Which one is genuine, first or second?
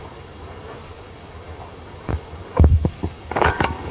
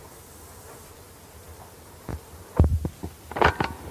second